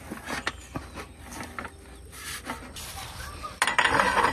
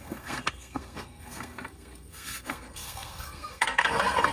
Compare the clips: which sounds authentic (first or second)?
first